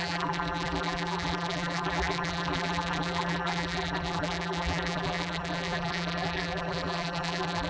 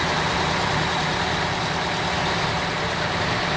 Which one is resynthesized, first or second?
first